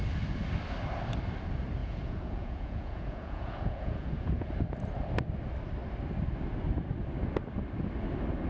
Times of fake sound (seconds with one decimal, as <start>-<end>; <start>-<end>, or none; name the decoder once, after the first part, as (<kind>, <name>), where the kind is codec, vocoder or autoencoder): 1.8-4.5 (vocoder, Vocos)